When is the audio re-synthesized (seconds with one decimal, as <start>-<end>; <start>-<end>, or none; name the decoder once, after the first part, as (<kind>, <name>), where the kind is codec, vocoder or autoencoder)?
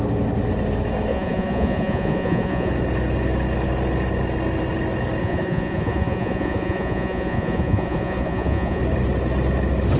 1.1-2.7 (vocoder, Vocos); 5.2-8.8